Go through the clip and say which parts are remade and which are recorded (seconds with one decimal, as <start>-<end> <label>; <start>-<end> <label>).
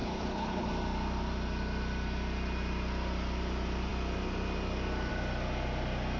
0.0-0.7 remade; 0.7-6.2 recorded